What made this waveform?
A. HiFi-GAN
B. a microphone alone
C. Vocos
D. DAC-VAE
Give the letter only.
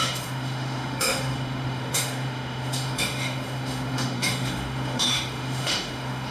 D